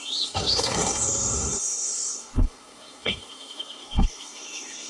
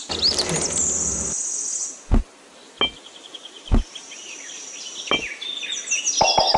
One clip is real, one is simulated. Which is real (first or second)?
second